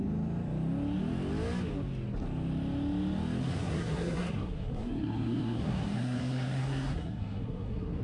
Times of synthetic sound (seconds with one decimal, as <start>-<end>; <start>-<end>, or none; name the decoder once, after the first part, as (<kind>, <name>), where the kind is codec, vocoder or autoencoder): 3.4-8.0 (codec, SNAC)